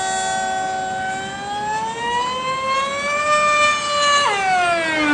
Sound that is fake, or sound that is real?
real